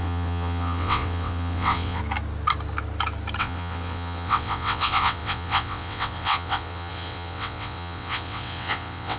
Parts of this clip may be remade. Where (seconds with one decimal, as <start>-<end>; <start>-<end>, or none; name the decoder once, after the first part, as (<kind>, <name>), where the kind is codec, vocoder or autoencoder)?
0.0-2.0 (vocoder, WaveNeXt); 3.4-9.2